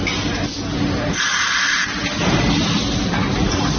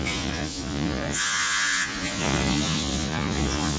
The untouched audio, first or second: first